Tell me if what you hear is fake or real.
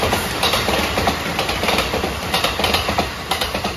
fake